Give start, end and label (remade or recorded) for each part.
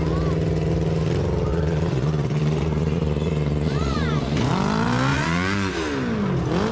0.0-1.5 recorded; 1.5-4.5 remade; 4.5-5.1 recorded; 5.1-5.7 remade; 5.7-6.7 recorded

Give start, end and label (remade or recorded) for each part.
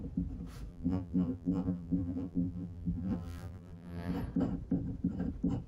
0.0-0.7 recorded; 0.7-4.1 remade; 4.1-5.7 recorded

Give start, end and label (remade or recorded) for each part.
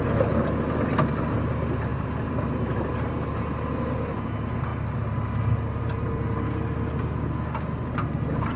0.0-1.9 recorded; 1.9-3.1 remade; 3.1-8.6 recorded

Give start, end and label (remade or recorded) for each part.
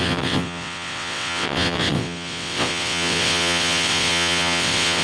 0.0-5.0 remade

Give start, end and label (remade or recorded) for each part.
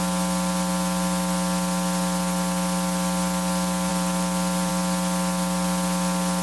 0.0-3.9 recorded; 3.9-4.7 remade; 4.7-6.4 recorded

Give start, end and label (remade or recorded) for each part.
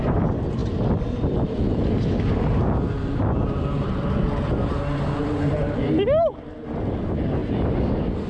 0.0-8.3 recorded